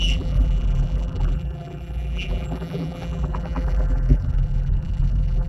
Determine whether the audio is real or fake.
fake